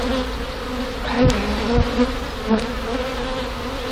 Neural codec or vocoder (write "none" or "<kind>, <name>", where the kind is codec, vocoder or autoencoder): none